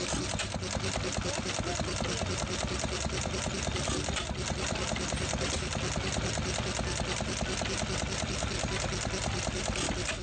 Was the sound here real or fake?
real